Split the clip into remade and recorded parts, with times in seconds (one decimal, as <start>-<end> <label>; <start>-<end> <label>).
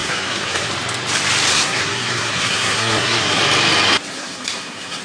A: 0.0-0.7 remade; 0.7-1.5 recorded; 1.5-3.4 remade; 3.4-4.1 recorded; 4.1-5.0 remade